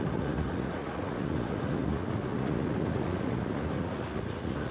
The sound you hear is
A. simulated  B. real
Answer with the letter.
A